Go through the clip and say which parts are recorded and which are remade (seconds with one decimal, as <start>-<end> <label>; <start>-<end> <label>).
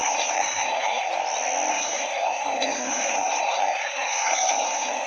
0.0-1.1 remade; 1.1-1.7 recorded; 1.7-5.1 remade